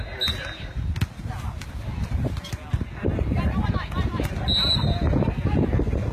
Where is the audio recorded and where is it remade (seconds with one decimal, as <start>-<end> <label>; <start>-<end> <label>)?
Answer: 0.0-6.1 recorded